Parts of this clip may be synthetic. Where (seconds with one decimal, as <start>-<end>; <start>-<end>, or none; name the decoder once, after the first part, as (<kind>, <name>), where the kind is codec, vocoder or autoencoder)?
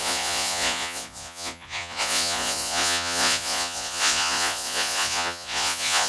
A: 0.0-6.1 (vocoder, Vocos)